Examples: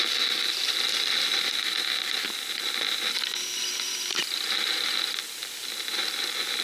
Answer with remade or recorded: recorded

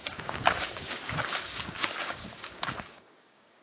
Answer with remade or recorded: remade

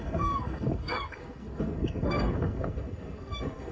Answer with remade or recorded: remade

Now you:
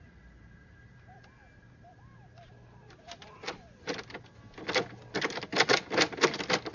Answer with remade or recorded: recorded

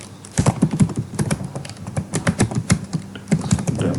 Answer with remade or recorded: remade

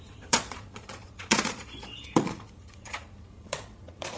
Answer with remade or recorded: remade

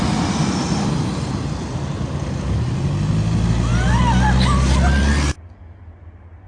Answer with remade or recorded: recorded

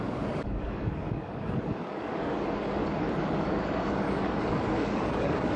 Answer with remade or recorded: remade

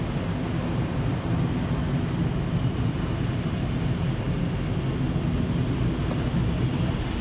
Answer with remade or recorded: recorded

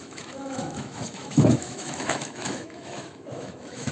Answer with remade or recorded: remade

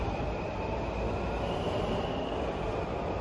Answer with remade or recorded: recorded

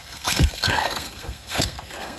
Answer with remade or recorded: remade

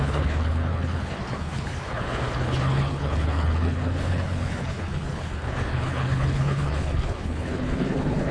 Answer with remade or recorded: remade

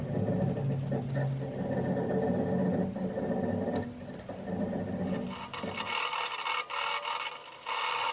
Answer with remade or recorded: recorded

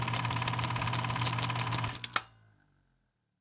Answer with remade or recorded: recorded